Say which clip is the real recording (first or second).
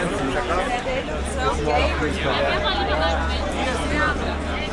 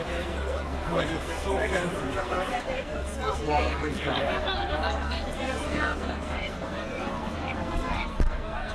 first